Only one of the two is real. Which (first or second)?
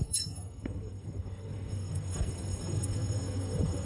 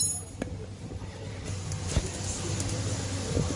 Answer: second